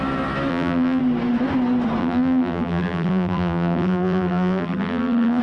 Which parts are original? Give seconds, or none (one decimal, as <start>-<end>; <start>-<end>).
0.0-0.5; 1.0-2.0